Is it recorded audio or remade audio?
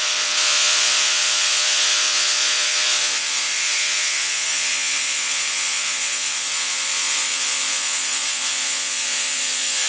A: remade